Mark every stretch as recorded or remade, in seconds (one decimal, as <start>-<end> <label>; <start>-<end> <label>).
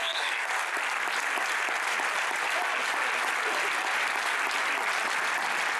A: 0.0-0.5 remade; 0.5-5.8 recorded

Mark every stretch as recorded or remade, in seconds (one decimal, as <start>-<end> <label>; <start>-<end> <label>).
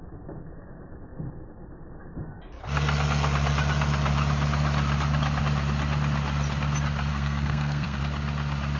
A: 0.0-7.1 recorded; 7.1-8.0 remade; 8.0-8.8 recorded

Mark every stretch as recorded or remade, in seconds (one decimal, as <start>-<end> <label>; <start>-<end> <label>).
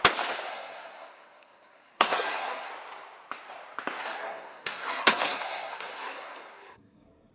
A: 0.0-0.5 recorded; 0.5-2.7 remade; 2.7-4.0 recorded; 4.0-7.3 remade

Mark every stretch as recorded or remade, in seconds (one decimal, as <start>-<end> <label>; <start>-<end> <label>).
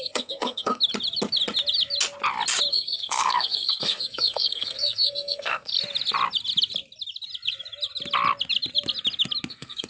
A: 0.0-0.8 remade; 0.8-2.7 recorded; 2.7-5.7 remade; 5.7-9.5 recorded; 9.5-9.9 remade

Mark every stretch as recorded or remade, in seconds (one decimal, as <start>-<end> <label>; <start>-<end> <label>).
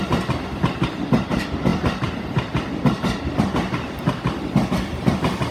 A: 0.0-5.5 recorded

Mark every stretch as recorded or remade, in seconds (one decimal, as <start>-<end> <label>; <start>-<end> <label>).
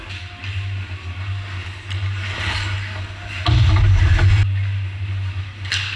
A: 0.0-6.0 recorded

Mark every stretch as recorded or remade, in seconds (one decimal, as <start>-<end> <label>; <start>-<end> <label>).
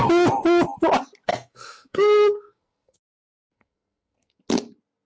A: 0.0-1.3 recorded; 1.3-4.4 remade; 4.4-5.1 recorded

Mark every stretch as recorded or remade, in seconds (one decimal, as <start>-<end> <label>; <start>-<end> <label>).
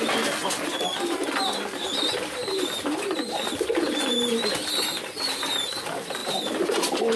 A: 0.0-7.2 recorded